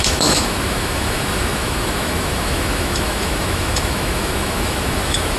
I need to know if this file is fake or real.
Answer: fake